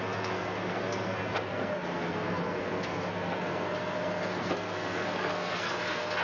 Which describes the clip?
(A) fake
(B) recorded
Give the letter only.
A